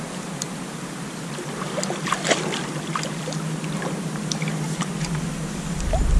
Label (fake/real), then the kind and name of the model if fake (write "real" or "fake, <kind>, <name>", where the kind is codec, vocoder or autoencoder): real